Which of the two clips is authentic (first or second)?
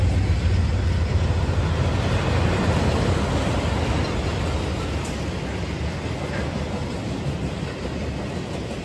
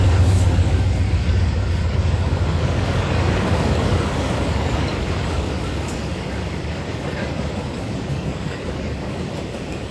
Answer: first